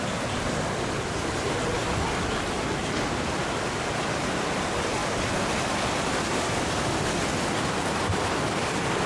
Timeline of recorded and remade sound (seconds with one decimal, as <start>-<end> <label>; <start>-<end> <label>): 0.0-9.1 recorded